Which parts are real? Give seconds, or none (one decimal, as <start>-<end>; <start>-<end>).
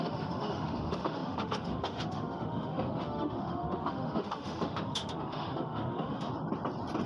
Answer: 6.3-7.1